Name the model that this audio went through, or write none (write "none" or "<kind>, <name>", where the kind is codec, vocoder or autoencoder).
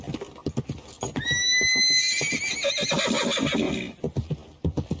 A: none